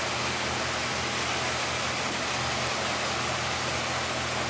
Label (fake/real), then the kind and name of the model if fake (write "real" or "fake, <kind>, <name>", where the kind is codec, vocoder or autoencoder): real